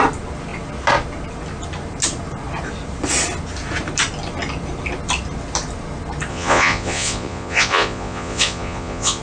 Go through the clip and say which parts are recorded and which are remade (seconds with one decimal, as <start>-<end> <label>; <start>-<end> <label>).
0.0-6.3 recorded; 6.3-9.2 remade